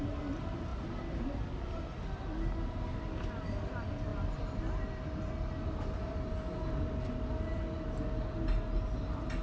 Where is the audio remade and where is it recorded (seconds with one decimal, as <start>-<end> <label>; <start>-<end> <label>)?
0.0-9.4 recorded